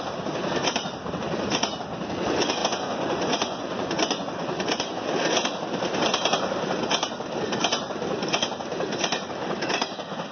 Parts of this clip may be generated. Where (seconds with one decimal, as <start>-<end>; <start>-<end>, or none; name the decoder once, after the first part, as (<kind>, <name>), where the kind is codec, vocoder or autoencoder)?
2.6-5.1 (vocoder, Vocos)